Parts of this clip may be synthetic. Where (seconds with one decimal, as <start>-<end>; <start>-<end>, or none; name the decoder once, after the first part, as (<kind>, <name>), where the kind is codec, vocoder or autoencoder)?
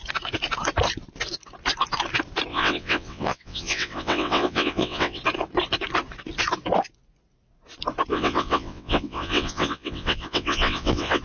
2.5-5.2 (vocoder, WaveNeXt); 8.1-11.2